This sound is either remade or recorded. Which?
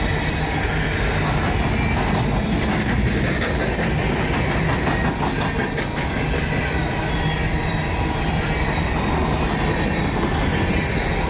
recorded